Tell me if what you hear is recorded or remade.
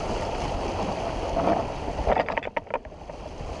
recorded